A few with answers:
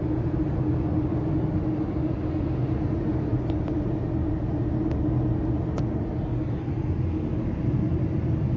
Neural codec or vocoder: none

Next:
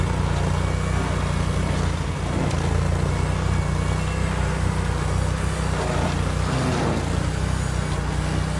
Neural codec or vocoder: none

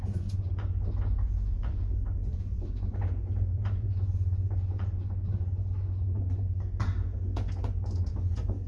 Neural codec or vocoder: vocoder, Vocos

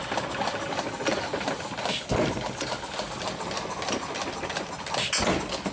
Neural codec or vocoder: none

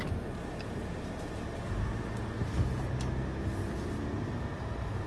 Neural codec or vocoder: none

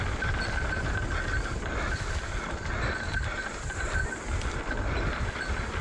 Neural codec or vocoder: none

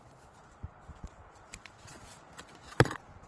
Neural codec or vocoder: vocoder, Vocos